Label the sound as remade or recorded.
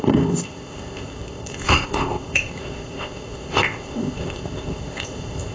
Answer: remade